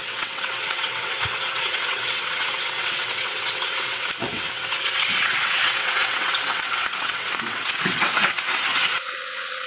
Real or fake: fake